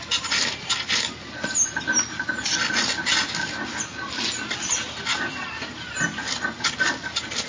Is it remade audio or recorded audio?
recorded